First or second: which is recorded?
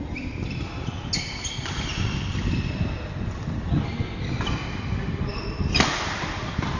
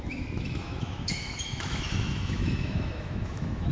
first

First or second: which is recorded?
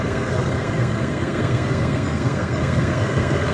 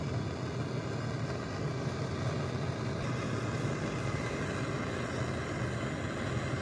second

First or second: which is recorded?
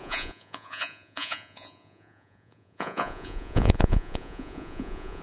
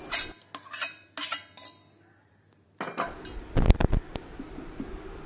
second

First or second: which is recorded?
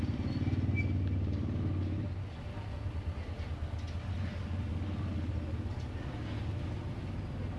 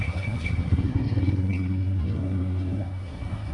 first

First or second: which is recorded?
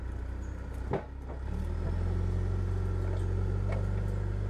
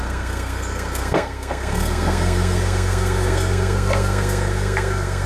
first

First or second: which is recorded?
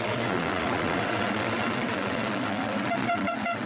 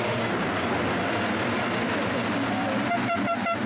second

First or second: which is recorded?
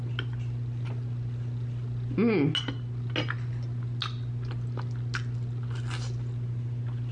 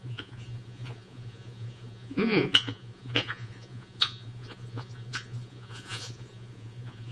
first